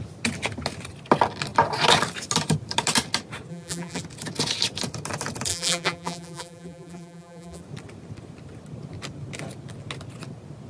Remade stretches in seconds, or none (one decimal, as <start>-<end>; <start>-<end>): 3.5-4.0; 5.5-7.6